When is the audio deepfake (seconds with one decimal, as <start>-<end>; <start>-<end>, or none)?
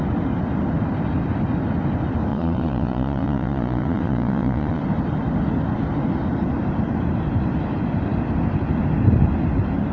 2.3-4.8